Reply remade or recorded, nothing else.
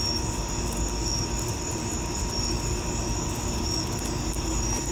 recorded